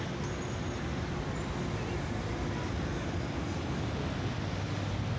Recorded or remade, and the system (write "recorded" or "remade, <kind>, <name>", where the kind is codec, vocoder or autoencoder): recorded